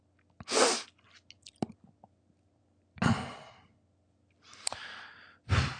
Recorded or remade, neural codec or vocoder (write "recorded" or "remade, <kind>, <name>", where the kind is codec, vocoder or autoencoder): recorded